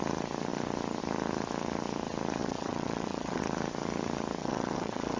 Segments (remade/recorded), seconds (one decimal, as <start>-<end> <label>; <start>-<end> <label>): 0.0-2.4 recorded; 2.4-3.4 remade; 3.4-4.4 recorded; 4.4-5.2 remade